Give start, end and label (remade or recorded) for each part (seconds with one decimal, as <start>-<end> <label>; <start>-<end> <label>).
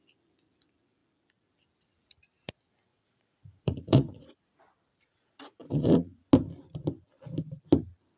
0.0-2.9 recorded; 2.9-4.6 remade; 4.6-5.1 recorded; 5.1-6.3 remade; 6.3-8.2 recorded